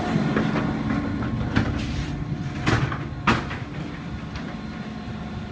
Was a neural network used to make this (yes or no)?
no